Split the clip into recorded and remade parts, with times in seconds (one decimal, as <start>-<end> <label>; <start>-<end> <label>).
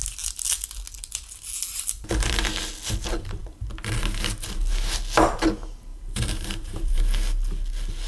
0.0-5.9 recorded; 5.9-7.0 remade; 7.0-8.1 recorded